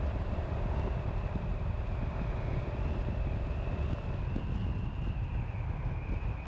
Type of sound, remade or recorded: remade